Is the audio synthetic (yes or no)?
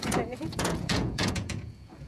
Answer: yes